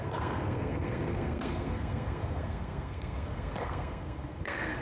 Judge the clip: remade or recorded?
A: remade